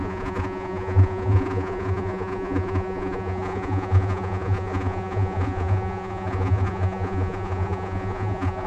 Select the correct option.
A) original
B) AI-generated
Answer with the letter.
B